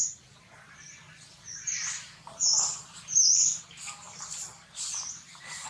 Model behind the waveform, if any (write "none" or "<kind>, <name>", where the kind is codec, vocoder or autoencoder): none